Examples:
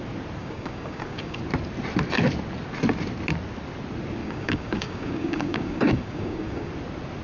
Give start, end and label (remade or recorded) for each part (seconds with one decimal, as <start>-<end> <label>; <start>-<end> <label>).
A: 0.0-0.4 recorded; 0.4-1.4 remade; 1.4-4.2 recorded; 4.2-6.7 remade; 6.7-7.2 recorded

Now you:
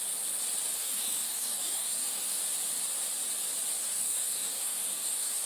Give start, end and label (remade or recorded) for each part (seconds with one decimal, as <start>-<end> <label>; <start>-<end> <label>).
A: 0.0-0.8 recorded; 0.8-2.4 remade; 2.4-3.8 recorded; 3.8-5.5 remade

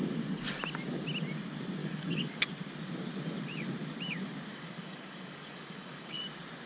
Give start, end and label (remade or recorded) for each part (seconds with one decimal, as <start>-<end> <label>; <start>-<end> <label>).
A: 0.0-1.8 recorded; 1.8-2.4 remade; 2.4-4.5 recorded; 4.5-6.2 remade; 6.2-6.7 recorded